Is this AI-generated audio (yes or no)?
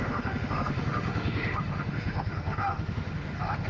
yes